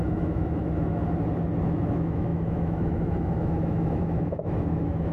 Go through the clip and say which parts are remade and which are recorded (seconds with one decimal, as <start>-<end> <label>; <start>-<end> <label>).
0.0-1.0 remade; 1.0-1.7 recorded; 1.7-5.1 remade